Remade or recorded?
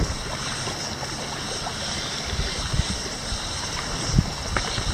recorded